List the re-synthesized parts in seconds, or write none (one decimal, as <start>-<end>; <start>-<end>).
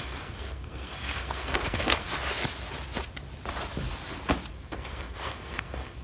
0.0-2.1; 4.5-6.0